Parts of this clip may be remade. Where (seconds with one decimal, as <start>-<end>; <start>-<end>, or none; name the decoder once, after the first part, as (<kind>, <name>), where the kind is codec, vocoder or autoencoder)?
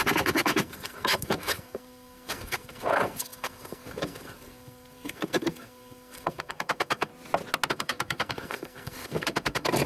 0.0-7.1 (codec, SNAC); 7.7-9.9